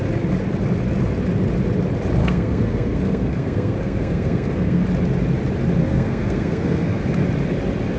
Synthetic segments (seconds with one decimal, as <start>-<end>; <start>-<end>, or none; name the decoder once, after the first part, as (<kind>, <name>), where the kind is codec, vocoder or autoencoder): 2.2-4.8 (codec, SNAC); 5.8-7.0